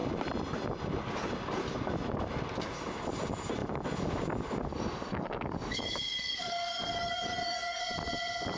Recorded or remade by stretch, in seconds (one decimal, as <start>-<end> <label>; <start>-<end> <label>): 0.0-4.7 recorded; 4.7-7.8 remade; 7.8-8.6 recorded